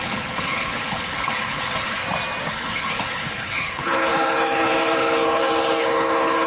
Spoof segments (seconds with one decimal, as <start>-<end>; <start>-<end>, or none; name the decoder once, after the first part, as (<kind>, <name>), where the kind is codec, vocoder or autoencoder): 0.0-2.0 (codec, HILCodec); 2.5-6.5